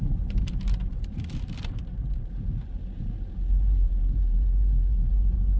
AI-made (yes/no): yes